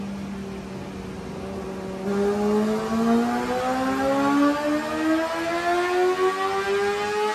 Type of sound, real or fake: real